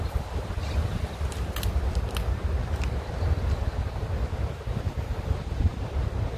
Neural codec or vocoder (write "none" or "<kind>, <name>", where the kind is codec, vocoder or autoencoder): none